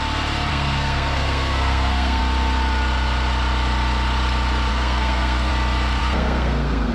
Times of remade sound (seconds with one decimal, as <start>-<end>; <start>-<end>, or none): 0.5-2.2; 4.7-5.5; 6.0-6.9